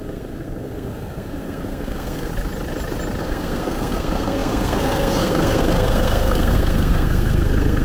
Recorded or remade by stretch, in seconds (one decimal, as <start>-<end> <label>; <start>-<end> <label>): 0.0-2.3 remade; 2.3-3.2 recorded; 3.2-7.8 remade